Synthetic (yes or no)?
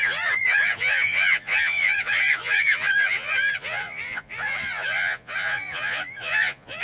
yes